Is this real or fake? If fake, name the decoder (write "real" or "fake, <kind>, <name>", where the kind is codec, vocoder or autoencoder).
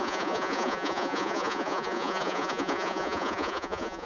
fake, vocoder, Vocos